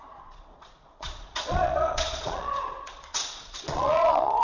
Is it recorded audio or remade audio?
remade